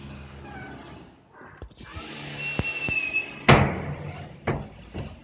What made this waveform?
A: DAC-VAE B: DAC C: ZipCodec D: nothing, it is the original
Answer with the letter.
D